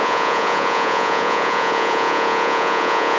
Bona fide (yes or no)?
no